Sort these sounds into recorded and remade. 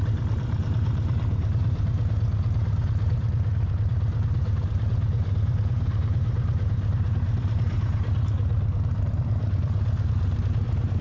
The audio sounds remade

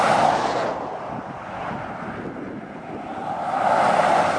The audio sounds recorded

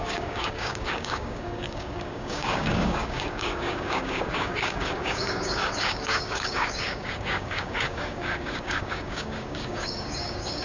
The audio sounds remade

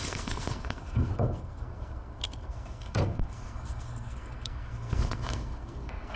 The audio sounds remade